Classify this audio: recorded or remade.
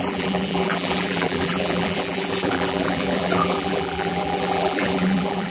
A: remade